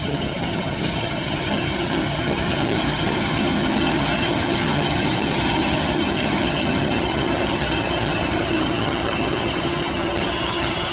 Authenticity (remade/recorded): remade